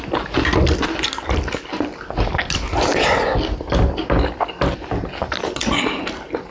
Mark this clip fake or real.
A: real